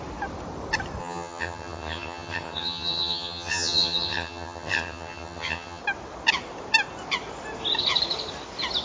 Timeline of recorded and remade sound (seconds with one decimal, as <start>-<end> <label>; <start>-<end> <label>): 0.0-1.0 recorded; 1.0-5.8 remade; 5.8-8.8 recorded